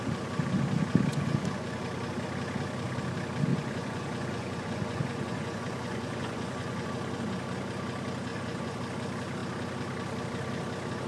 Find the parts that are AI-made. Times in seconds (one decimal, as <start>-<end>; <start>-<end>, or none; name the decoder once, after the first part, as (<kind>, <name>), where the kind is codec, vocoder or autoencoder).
1.1-1.8 (vocoder, Vocos); 3.5-6.9; 8.3-8.8